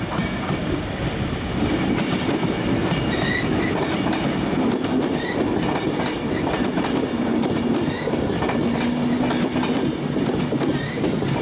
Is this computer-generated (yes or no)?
no